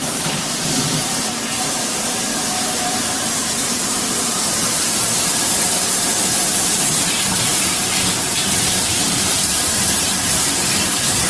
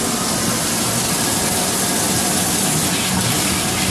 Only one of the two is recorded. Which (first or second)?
second